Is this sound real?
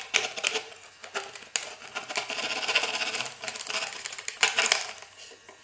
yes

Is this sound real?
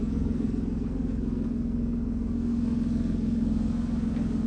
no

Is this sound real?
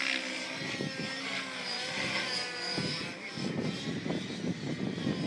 yes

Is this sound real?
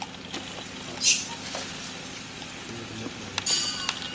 yes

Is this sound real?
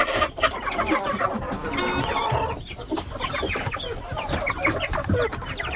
yes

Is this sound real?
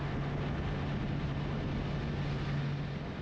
yes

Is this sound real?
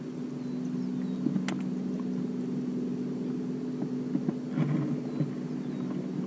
yes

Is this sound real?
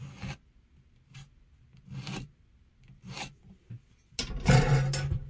yes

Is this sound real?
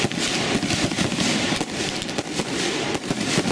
yes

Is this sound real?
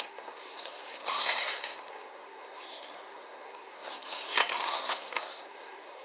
no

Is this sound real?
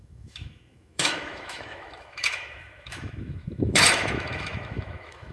no